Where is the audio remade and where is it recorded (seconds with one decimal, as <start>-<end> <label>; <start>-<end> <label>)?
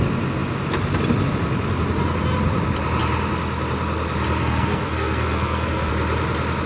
0.0-4.4 recorded; 4.4-5.9 remade; 5.9-6.7 recorded